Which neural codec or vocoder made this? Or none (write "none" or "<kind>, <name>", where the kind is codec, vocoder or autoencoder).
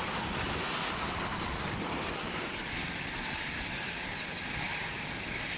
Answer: vocoder, BigVGAN v2